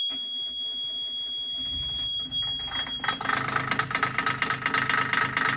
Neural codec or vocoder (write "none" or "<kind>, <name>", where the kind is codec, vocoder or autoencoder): none